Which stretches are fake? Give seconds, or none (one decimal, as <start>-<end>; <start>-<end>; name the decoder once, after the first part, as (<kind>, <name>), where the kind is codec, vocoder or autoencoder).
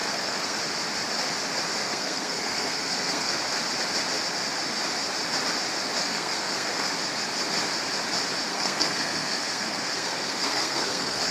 0.0-0.6 (codec, SNAC); 1.8-3.4; 6.0-6.9; 8.5-11.3